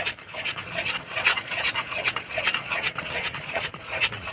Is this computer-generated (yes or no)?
yes